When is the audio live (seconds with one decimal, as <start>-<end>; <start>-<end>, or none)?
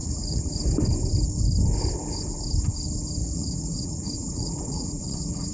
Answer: 0.5-3.2